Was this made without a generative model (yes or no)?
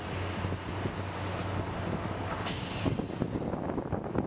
yes